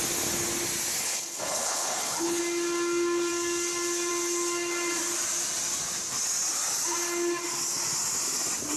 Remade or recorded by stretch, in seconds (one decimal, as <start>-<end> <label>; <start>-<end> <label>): 0.0-1.0 recorded; 1.0-2.4 remade; 2.4-8.8 recorded